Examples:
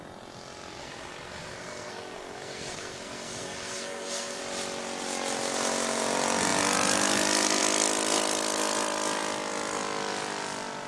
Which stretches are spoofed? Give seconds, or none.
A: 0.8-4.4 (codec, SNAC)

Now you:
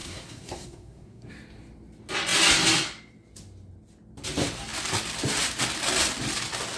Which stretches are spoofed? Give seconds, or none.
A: 0.0-1.3 (codec, SNAC)

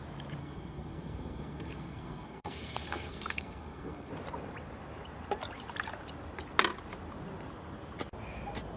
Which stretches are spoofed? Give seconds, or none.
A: 0.4-4.1 (codec, SNAC)

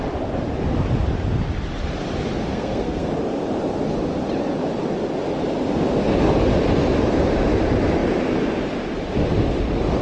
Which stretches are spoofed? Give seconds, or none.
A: 2.5-3.1 (codec, SNAC)